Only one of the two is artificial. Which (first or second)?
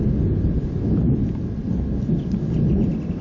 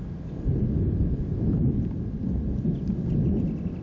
second